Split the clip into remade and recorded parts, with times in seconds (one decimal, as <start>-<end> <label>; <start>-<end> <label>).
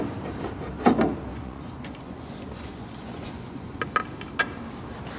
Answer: 0.0-1.3 recorded; 1.3-3.8 remade; 3.8-5.2 recorded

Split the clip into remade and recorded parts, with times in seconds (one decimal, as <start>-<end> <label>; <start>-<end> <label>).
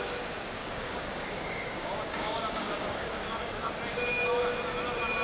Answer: 0.0-0.6 recorded; 0.6-3.7 remade; 3.7-5.2 recorded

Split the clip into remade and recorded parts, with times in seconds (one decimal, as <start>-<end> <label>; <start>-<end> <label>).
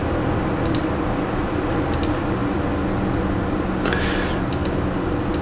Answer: 0.0-5.4 recorded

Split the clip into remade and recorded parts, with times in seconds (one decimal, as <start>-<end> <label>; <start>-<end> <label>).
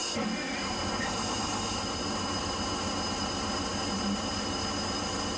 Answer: 0.0-5.4 recorded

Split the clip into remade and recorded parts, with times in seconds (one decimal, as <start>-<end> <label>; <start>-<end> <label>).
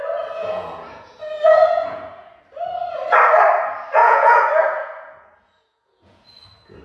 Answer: 0.0-0.4 recorded; 0.4-2.4 remade; 2.4-4.0 recorded; 4.0-6.8 remade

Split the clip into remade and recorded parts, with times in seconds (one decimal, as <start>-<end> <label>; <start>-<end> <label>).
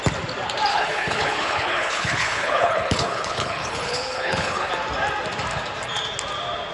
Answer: 0.0-0.7 recorded; 0.7-4.7 remade; 4.7-6.7 recorded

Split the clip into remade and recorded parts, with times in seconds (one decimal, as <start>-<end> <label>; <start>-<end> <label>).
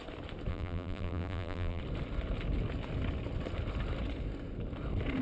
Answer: 0.0-0.5 recorded; 0.5-1.8 remade; 1.8-5.2 recorded